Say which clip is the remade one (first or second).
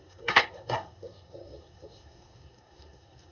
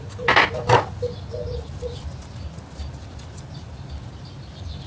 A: first